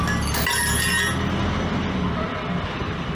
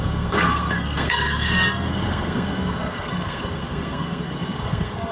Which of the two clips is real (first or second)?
first